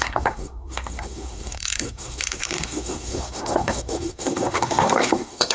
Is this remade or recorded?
remade